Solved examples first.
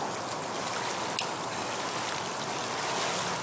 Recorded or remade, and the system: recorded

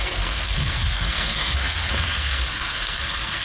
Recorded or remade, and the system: remade, codec, SNAC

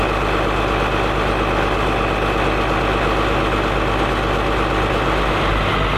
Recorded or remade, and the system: recorded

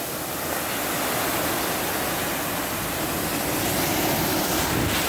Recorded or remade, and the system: recorded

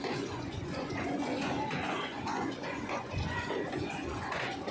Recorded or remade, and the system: remade, vocoder, Vocos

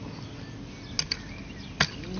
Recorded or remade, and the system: recorded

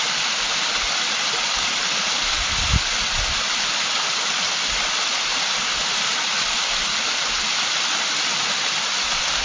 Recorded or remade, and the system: remade, vocoder, BigVGAN v2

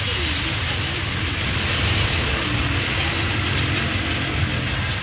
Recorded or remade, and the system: recorded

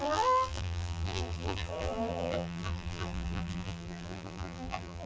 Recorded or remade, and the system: remade, vocoder, BigVGAN v2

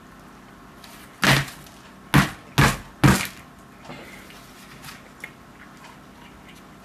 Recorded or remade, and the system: recorded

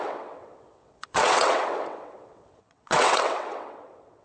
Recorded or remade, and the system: remade, vocoder, WaveNeXt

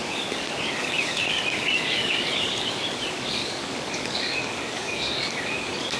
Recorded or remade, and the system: remade, codec, DAC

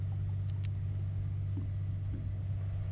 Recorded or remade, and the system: recorded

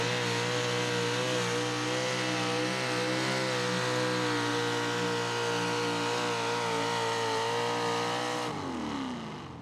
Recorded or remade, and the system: recorded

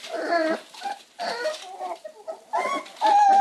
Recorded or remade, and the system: recorded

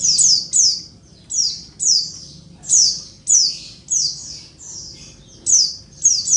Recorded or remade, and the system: recorded